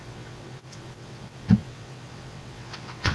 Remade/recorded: remade